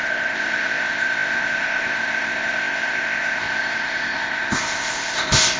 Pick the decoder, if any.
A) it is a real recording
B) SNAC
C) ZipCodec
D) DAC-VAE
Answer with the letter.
C